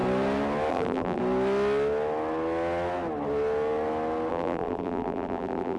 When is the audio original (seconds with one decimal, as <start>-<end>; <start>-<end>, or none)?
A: 0.0-0.7; 1.2-4.3